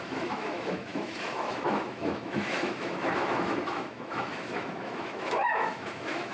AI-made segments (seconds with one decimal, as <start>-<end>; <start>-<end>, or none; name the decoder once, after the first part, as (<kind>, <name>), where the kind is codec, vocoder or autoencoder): 0.0-6.3 (autoencoder, DAC-VAE)